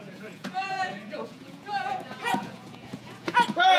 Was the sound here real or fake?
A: fake